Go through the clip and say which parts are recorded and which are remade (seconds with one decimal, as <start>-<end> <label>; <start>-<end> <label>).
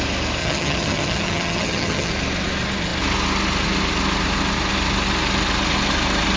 0.0-0.4 recorded; 0.4-2.1 remade; 2.1-6.4 recorded